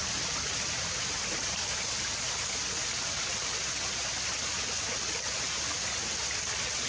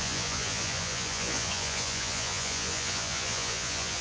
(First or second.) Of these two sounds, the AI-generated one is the second